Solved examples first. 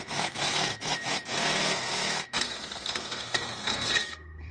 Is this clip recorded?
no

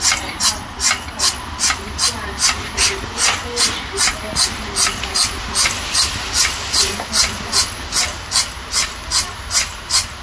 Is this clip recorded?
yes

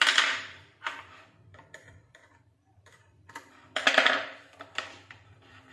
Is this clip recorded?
no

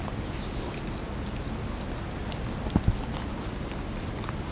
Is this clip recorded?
yes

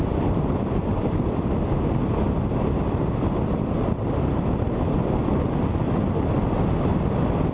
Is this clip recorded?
yes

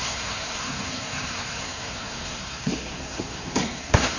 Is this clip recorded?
no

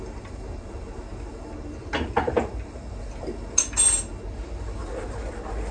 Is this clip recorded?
yes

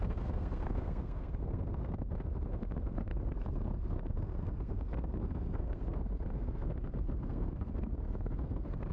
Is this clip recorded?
no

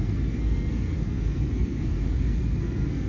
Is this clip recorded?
no